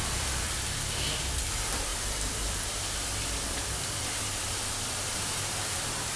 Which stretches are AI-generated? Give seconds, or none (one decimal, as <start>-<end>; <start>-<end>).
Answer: 0.0-6.2